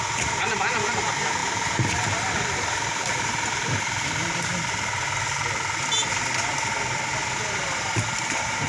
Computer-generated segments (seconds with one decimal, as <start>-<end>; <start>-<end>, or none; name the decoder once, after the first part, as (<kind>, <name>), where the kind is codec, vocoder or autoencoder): 0.0-4.5 (vocoder, BigVGAN v2); 8.2-8.7